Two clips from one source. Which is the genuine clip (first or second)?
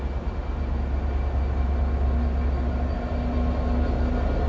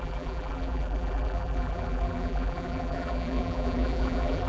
first